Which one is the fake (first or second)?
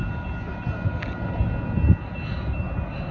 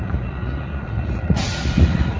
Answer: second